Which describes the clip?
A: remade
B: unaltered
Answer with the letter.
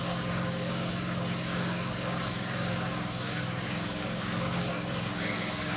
A